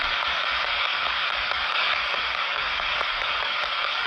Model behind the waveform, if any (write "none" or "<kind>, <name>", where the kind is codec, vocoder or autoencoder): codec, DAC